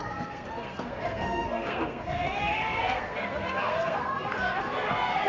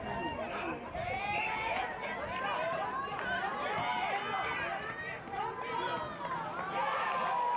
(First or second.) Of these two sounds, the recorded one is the second